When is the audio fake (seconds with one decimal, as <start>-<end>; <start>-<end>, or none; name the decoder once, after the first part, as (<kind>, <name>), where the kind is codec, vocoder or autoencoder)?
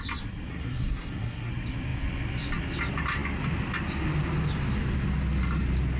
0.5-1.5 (codec, SNAC)